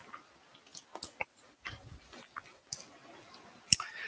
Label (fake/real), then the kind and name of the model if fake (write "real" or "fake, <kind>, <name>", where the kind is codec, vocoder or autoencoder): real